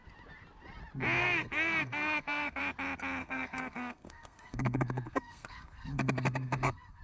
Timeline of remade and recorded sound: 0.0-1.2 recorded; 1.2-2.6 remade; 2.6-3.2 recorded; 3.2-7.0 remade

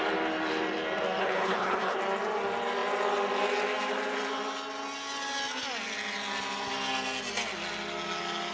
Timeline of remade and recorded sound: 0.0-1.2 recorded; 1.2-2.0 remade; 2.0-8.5 recorded

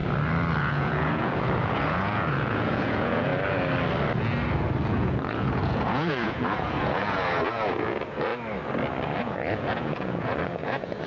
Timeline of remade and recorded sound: 0.0-0.6 recorded; 0.6-3.3 remade; 3.3-4.9 recorded; 4.9-8.3 remade; 8.3-9.2 recorded; 9.2-11.1 remade

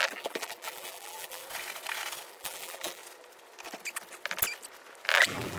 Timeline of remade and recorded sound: 0.0-1.4 remade; 1.4-2.3 recorded; 2.3-3.0 remade; 3.0-5.1 recorded; 5.1-5.6 remade

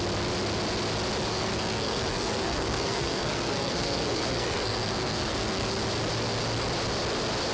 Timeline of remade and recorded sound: 0.0-1.3 recorded; 1.3-5.8 remade; 5.8-7.5 recorded

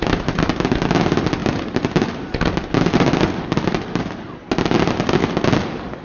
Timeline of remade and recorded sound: 0.0-6.0 recorded